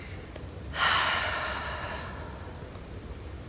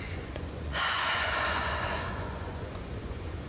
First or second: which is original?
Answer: first